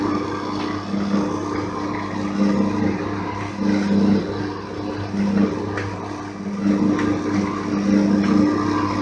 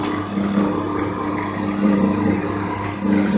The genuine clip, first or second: first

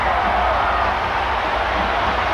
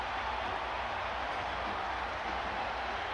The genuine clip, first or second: second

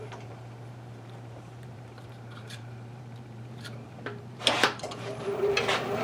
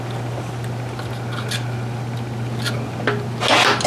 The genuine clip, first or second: second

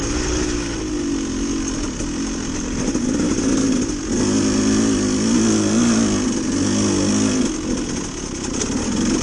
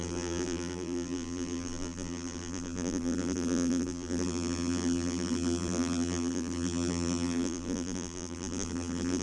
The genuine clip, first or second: first